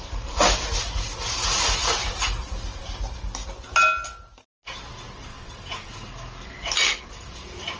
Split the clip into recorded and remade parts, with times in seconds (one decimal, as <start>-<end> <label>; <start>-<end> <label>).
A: 0.0-5.3 recorded; 5.3-5.9 remade; 5.9-7.8 recorded